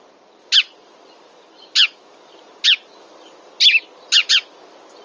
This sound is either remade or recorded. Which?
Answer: recorded